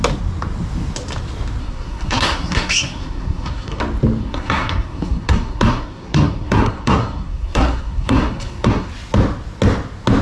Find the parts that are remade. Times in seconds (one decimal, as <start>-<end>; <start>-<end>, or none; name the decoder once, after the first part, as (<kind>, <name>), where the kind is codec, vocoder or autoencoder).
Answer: 1.6-3.8 (codec, SNAC); 4.2-8.9